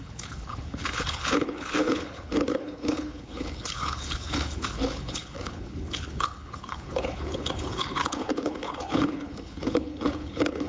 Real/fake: fake